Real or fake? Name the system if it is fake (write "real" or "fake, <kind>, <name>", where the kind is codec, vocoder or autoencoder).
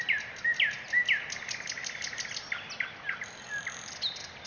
real